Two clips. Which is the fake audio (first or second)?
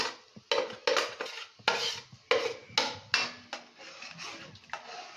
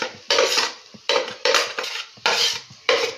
second